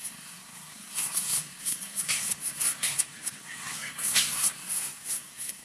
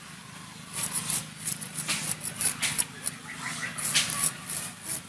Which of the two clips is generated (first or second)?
first